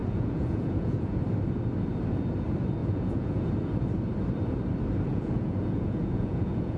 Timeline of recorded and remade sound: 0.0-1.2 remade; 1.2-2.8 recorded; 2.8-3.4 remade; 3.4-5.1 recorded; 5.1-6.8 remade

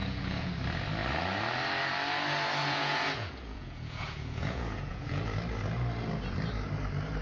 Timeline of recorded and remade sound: 0.0-0.5 remade; 0.5-2.6 recorded; 2.6-5.2 remade; 5.2-7.2 recorded

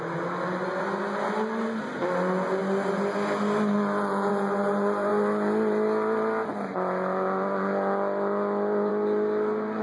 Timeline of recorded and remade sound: 0.0-9.8 recorded

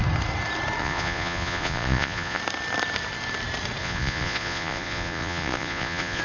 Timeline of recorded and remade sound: 0.0-0.8 recorded; 0.8-2.4 remade; 2.4-3.8 recorded; 3.8-6.2 remade